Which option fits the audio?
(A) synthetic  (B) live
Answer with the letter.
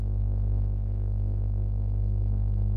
A